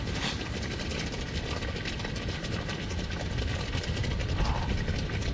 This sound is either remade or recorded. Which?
recorded